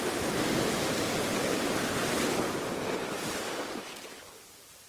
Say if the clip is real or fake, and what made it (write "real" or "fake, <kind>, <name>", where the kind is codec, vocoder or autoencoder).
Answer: real